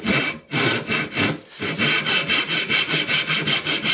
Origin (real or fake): real